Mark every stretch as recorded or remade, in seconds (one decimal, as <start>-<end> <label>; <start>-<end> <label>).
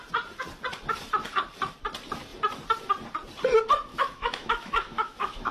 0.0-3.9 recorded; 3.9-5.5 remade